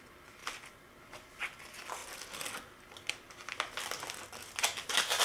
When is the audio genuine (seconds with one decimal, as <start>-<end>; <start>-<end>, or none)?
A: 0.0-5.2